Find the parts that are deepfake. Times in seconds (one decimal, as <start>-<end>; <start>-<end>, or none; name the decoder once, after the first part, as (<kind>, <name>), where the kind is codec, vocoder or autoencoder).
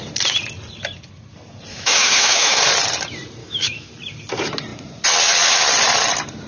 1.7-2.6 (autoencoder, DAC-VAE); 3.4-3.9